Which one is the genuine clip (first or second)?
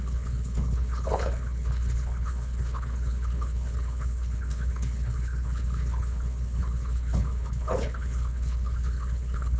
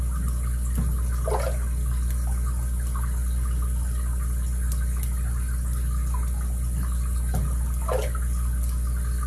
second